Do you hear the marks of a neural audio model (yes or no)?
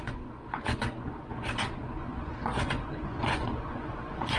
yes